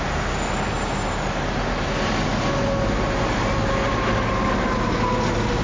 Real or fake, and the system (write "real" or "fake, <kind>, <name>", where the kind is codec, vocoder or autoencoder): real